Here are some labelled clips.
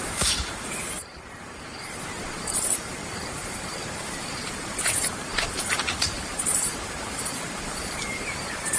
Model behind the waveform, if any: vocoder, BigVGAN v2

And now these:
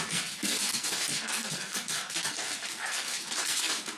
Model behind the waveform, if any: codec, SNAC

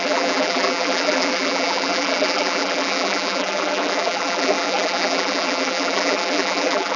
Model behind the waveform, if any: vocoder, BigVGAN v2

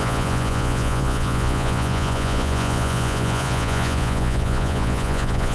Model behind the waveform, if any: vocoder, Vocos